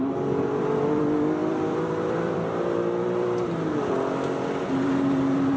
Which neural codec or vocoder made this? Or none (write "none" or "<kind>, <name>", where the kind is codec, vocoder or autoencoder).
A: vocoder, BigVGAN v2